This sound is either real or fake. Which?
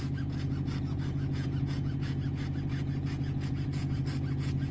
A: fake